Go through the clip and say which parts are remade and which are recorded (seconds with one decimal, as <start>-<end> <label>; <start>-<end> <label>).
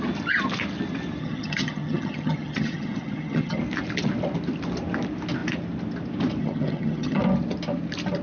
0.0-1.2 recorded; 1.2-3.6 remade; 3.6-6.4 recorded; 6.4-7.2 remade; 7.2-8.2 recorded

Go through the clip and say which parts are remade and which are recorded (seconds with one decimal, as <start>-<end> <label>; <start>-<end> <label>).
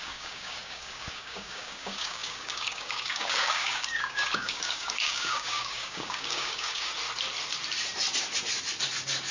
0.0-6.9 remade; 6.9-9.3 recorded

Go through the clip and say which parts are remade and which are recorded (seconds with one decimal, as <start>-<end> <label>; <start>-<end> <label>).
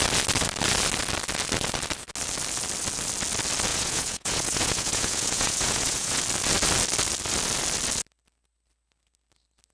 0.0-3.7 recorded; 3.7-6.2 remade; 6.2-9.7 recorded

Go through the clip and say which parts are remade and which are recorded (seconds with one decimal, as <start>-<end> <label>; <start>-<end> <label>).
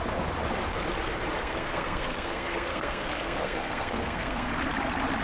0.0-1.4 recorded; 1.4-4.5 remade; 4.5-5.2 recorded